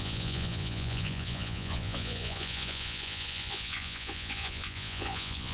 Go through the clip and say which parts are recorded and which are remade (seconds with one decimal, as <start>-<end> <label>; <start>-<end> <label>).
0.0-5.5 remade